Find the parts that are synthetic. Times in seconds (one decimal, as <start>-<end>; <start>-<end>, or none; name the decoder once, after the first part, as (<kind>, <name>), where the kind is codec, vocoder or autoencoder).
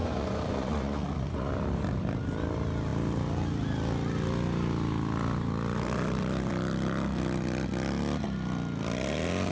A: 0.0-1.5 (vocoder, Vocos)